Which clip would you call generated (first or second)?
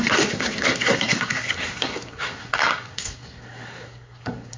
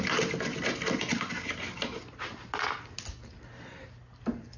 first